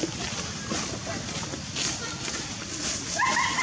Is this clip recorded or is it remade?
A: recorded